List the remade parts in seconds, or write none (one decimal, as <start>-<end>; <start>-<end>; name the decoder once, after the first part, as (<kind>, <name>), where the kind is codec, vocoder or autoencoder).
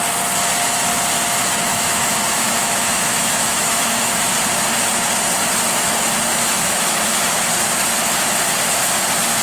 1.7-4.3 (autoencoder, DAC-VAE); 6.3-7.4